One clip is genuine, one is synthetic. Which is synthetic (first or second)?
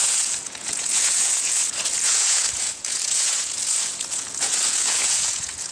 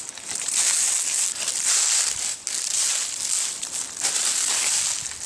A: first